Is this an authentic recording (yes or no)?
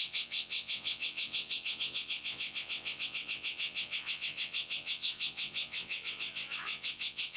no